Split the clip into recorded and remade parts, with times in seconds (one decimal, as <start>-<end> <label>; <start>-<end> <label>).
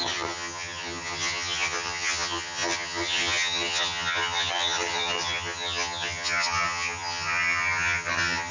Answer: 0.0-8.5 remade